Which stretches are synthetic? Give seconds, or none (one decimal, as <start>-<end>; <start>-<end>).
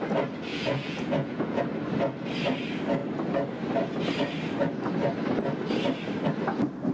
0.5-1.6